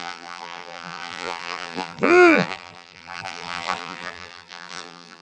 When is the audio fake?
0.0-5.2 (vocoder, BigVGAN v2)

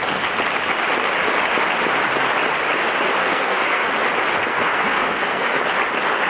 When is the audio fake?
3.2-3.9 (codec, SNAC); 4.5-5.6

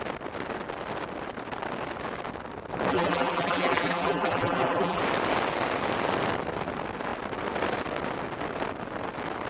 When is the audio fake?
2.9-5.0 (vocoder, BigVGAN v2)

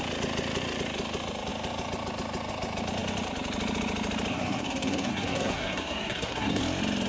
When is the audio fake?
4.3-6.6 (codec, SNAC)

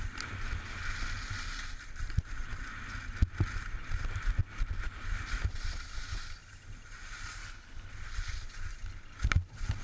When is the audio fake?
7.4-7.9 (codec, HILCodec)